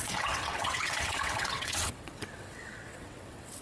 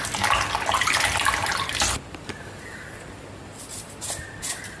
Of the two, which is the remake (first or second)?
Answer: first